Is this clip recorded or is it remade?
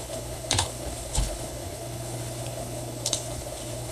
remade